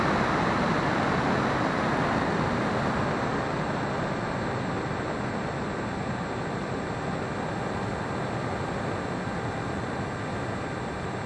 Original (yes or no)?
yes